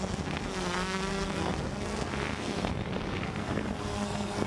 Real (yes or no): no